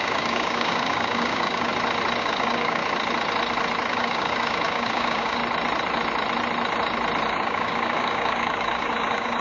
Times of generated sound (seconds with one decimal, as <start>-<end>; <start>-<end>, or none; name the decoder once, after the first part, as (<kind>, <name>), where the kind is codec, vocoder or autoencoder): 0.0-1.7 (codec, DAC); 2.2-2.8; 3.9-5.4; 7.3-9.4